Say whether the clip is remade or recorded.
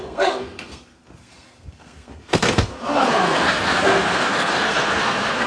remade